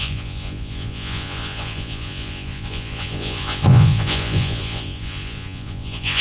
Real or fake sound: fake